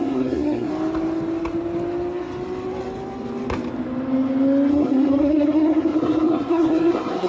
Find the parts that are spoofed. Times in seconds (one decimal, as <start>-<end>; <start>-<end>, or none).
0.0-0.7; 4.7-7.3